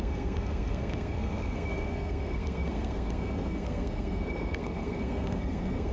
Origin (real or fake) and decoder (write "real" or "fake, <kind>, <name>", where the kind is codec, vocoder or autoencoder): fake, codec, SNAC